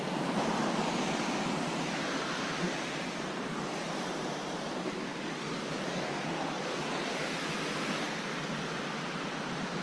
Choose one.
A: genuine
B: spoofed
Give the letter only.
A